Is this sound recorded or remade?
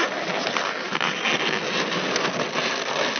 recorded